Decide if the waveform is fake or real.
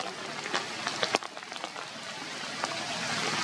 real